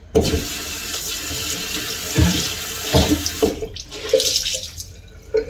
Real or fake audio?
real